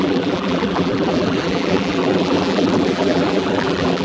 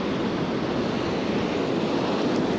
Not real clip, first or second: first